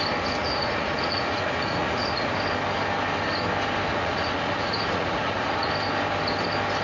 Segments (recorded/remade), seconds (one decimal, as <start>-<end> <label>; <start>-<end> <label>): 0.0-0.4 recorded; 0.4-2.4 remade; 2.4-3.9 recorded; 3.9-5.7 remade; 5.7-6.8 recorded